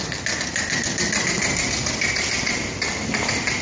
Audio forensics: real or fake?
real